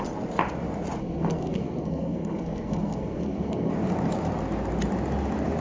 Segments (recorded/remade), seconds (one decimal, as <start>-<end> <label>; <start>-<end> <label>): 0.0-1.0 recorded; 1.0-3.7 remade; 3.7-5.6 recorded